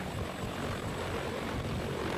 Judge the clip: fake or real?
real